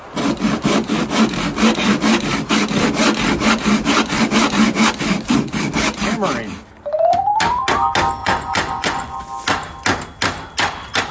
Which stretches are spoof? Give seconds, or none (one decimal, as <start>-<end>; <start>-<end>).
8.2-9.2